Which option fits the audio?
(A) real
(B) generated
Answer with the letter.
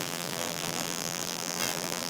B